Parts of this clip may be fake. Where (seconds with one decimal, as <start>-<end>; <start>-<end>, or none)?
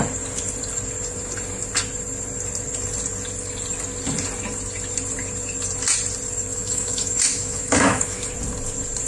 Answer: 6.5-8.3